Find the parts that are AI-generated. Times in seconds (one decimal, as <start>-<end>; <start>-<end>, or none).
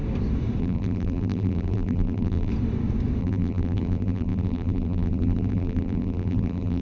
0.6-2.5; 3.2-6.8